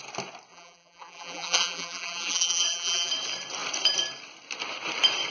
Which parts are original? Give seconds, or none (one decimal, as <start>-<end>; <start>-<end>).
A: 0.0-0.5; 3.1-5.3